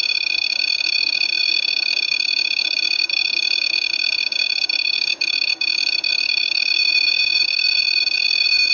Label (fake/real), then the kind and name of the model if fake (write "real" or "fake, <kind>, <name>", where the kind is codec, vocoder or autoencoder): fake, codec, DAC